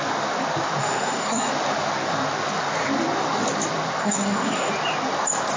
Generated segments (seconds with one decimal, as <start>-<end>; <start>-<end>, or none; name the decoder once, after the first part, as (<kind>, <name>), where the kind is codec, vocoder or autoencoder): 0.8-1.5 (codec, SNAC); 4.0-4.7